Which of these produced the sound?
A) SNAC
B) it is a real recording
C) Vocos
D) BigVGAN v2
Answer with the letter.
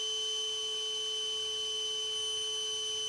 B